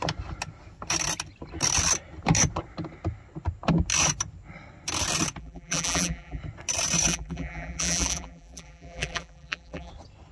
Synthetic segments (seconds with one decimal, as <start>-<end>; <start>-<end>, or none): 5.4-6.4; 7.1-9.9